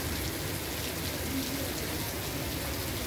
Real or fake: real